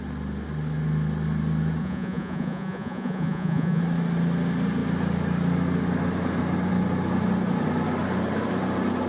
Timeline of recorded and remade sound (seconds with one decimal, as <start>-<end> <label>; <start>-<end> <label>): 0.0-1.8 recorded; 1.8-3.8 remade; 3.8-9.1 recorded